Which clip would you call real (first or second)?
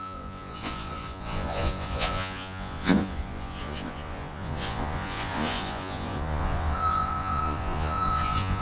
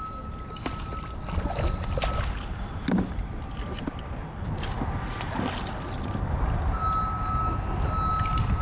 second